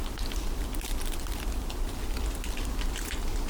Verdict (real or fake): real